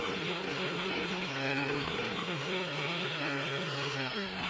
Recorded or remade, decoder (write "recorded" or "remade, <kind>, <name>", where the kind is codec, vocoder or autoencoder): remade, codec, SNAC